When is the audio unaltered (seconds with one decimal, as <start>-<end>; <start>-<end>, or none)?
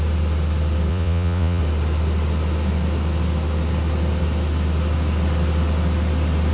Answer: 0.0-0.9; 1.6-6.5